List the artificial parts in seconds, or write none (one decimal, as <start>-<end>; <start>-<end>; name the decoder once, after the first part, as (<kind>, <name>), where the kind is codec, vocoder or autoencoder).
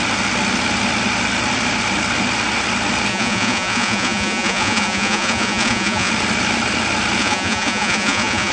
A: 3.1-6.1 (vocoder, Vocos); 7.2-8.5